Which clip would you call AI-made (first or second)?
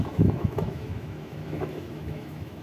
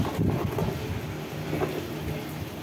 first